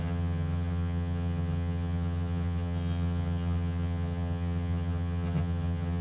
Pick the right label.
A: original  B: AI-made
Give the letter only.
B